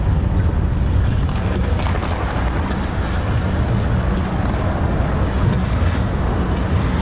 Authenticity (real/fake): real